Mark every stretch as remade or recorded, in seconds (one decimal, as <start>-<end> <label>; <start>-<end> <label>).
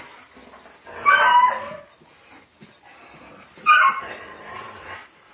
0.0-0.4 remade; 0.4-3.2 recorded; 3.2-5.3 remade